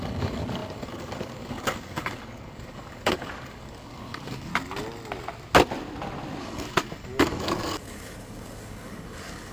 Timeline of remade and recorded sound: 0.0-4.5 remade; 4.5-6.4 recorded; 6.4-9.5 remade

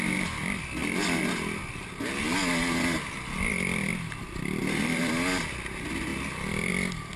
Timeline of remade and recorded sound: 0.0-7.2 recorded

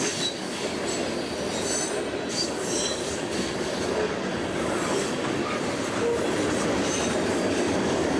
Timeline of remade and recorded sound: 0.0-0.7 remade; 0.7-2.3 recorded; 2.3-5.4 remade; 5.4-7.3 recorded; 7.3-8.2 remade

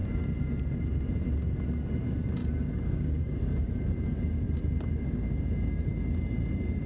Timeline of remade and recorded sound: 0.0-2.4 recorded; 2.4-3.7 remade; 3.7-6.9 recorded